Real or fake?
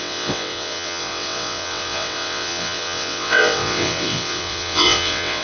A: fake